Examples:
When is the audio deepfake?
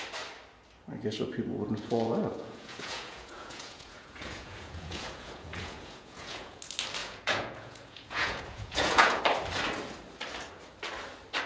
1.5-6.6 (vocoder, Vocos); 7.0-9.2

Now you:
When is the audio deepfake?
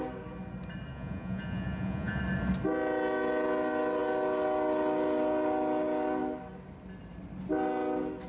0.9-2.2 (vocoder, Vocos)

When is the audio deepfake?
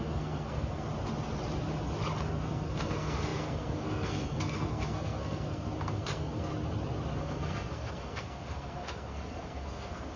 0.0-0.9 (codec, SNAC); 2.2-6.5; 7.2-10.2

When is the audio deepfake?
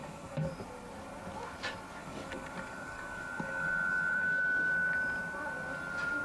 0.0-0.5 (codec, DAC); 2.0-4.4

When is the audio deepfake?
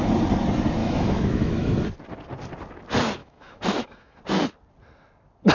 0.8-1.7 (autoencoder, DAC-VAE); 3.2-4.2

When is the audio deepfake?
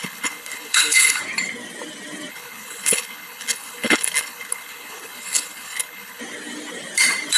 0.0-1.2 (codec, HILCodec); 2.3-6.2